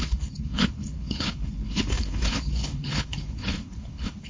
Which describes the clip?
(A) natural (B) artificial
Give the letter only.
B